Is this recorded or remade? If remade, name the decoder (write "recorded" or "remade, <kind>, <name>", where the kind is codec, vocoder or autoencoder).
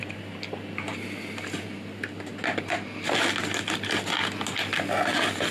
recorded